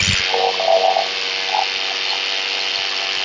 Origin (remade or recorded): recorded